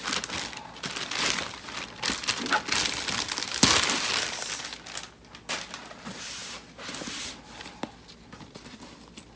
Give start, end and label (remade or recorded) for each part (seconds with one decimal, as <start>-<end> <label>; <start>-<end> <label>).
0.0-9.4 recorded